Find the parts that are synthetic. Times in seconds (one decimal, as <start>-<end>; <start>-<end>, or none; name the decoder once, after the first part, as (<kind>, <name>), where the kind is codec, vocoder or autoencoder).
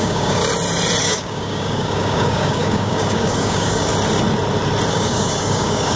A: 0.0-0.4 (codec, DAC); 1.0-3.9; 4.9-6.0